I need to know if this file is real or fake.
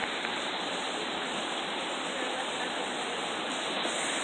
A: real